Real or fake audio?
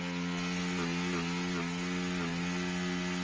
real